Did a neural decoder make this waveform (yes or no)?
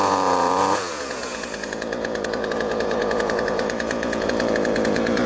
yes